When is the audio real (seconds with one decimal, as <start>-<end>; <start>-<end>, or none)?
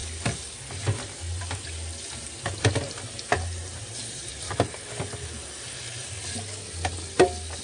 0.0-3.6; 4.5-7.6